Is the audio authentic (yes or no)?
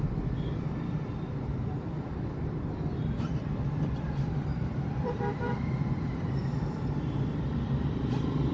no